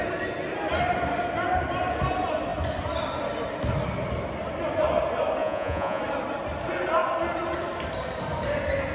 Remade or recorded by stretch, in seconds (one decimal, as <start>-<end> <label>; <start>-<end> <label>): 0.0-5.4 recorded; 5.4-6.0 remade; 6.0-8.9 recorded